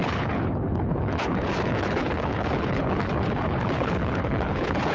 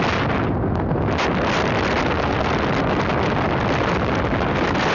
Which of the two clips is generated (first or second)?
first